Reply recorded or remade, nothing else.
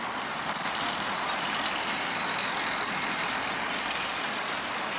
remade